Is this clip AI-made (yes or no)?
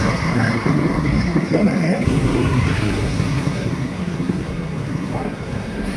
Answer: yes